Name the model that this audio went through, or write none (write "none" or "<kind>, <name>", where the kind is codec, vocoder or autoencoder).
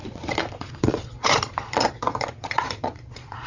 vocoder, Vocos